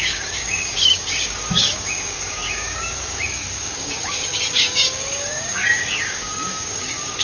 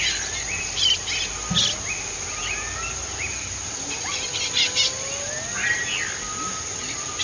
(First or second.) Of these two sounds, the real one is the second